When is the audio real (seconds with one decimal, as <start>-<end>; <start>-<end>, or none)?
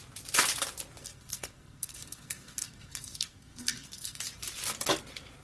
0.0-1.0; 4.2-5.4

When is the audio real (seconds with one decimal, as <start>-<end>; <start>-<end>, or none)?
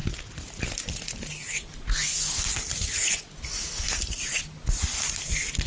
0.0-5.7